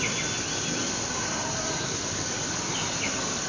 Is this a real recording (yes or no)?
yes